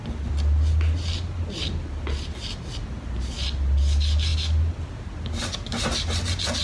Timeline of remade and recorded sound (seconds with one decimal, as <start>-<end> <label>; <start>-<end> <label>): 0.0-6.6 recorded